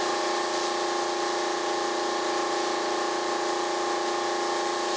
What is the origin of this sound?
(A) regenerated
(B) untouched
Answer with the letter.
B